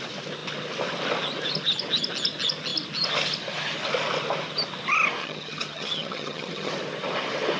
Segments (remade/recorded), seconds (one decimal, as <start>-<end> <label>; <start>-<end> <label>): 0.0-5.2 recorded; 5.2-6.7 remade; 6.7-7.6 recorded